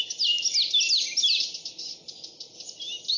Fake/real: real